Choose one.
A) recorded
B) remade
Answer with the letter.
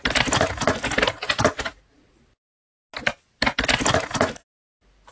A